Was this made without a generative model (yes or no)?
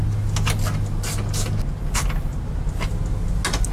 yes